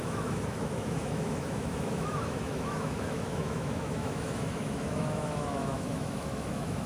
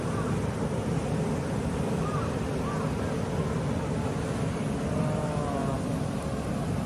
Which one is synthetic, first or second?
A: first